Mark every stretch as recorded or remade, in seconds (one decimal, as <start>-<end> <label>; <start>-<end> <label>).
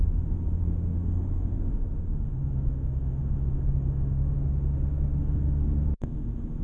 0.0-6.6 remade